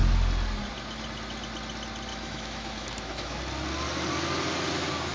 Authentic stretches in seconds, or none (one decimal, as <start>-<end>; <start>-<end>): 0.0-2.1; 3.4-5.1